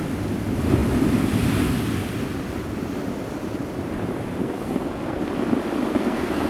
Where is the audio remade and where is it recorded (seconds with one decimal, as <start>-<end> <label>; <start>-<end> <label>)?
0.0-4.4 recorded; 4.4-5.2 remade; 5.2-5.9 recorded; 5.9-6.5 remade